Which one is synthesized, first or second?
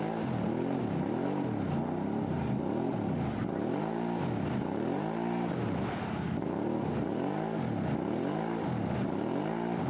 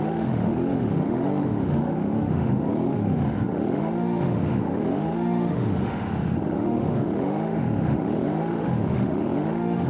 second